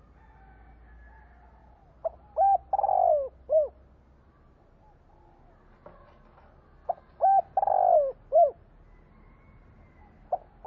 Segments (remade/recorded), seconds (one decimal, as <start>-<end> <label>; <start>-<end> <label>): 0.0-10.7 recorded

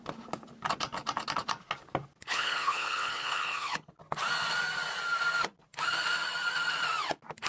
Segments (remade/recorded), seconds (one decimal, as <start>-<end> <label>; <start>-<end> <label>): 0.0-2.3 recorded; 2.3-3.9 remade; 3.9-7.5 recorded

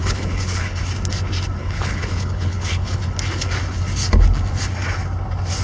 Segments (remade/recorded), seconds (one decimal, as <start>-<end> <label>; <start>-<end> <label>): 0.0-0.8 remade; 0.8-1.6 recorded; 1.6-3.0 remade; 3.0-5.6 recorded

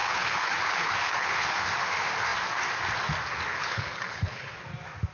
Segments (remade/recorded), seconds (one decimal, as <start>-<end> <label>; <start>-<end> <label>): 0.0-1.6 remade; 1.6-3.5 recorded; 3.5-4.6 remade; 4.6-5.1 recorded

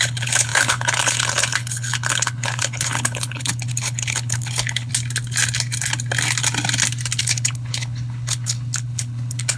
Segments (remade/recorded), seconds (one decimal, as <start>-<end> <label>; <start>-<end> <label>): 0.0-4.9 remade; 4.9-7.2 recorded; 7.2-9.6 remade

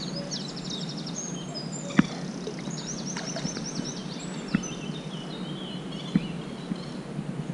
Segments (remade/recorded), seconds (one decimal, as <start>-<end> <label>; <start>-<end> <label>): 0.0-7.5 recorded